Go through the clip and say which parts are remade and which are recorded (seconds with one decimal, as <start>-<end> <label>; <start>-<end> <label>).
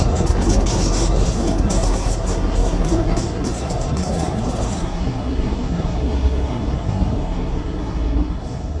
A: 0.0-8.8 remade